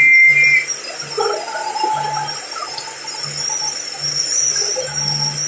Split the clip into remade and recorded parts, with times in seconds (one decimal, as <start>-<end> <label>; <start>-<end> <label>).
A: 0.0-5.5 recorded